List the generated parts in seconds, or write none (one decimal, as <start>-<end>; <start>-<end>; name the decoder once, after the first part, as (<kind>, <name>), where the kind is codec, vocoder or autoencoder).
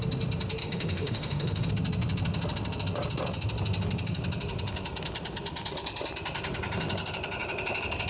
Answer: 0.6-1.7 (autoencoder, DAC-VAE)